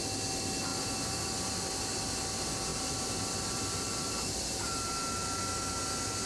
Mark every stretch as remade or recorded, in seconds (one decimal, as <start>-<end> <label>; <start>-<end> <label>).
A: 0.0-0.7 recorded; 0.7-1.8 remade; 1.8-2.7 recorded; 2.7-4.1 remade; 4.1-6.3 recorded